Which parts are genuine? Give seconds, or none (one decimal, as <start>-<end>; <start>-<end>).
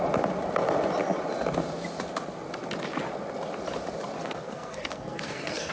0.0-4.2